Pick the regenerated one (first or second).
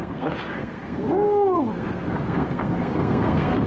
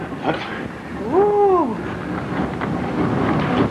first